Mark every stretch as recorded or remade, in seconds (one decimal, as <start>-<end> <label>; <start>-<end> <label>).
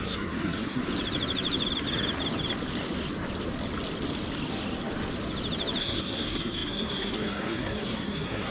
0.0-0.8 remade; 0.8-5.8 recorded; 5.8-8.5 remade